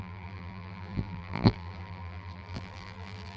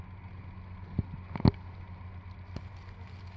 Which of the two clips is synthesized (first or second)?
first